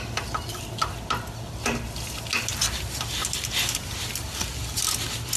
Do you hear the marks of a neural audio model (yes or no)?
no